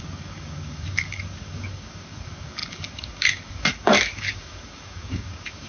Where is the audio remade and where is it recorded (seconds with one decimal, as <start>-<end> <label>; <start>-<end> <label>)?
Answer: 0.0-5.7 remade